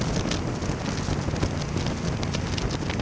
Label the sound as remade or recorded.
recorded